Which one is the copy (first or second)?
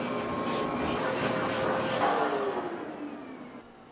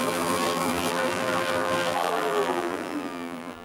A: second